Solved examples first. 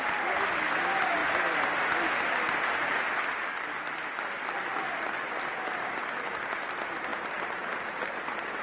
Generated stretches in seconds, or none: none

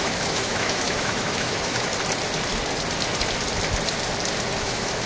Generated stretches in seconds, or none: 0.0-1.9 (autoencoder, DAC-VAE); 4.6-5.1

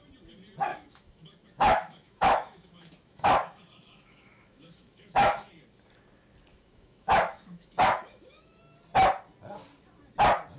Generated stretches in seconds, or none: 0.7-5.5 (autoencoder, DAC-VAE); 6.5-8.6

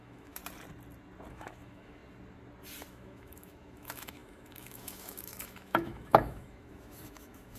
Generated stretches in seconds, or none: 0.0-0.4 (autoencoder, DAC-VAE); 1.3-2.0; 2.9-7.6

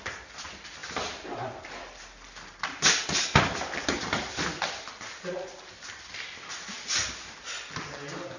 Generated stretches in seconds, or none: none

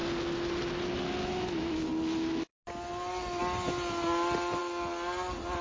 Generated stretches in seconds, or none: 1.2-1.8 (autoencoder, DAC-VAE)

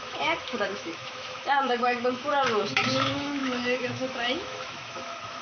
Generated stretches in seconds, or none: 0.0-5.4 (autoencoder, DAC-VAE)

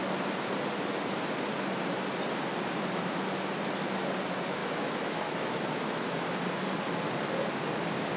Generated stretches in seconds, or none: 4.6-5.6 (autoencoder, DAC-VAE)